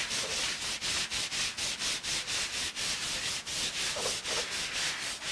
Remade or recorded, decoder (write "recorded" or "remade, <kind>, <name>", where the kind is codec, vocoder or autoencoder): recorded